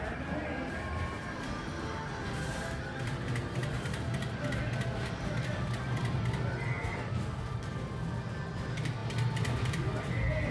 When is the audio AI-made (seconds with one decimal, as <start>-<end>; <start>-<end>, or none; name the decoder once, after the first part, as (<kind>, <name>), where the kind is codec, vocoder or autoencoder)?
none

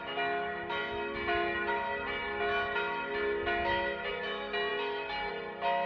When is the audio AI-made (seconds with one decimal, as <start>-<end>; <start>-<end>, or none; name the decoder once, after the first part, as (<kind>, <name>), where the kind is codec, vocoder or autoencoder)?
none

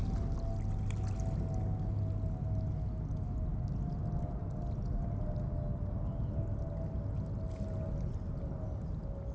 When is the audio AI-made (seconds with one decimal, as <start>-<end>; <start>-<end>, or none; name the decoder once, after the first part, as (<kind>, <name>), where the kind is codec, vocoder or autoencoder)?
none

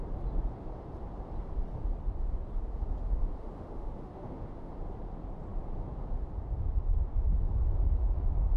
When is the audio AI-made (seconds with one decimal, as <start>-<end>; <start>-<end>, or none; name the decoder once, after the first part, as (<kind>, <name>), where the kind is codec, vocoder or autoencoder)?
3.4-4.7 (autoencoder, DAC-VAE)